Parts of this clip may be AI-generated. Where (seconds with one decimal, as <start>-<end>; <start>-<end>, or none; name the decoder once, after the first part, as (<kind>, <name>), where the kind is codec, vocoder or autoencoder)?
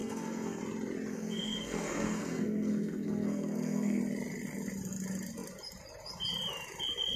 0.0-0.6 (codec, SNAC); 1.1-4.0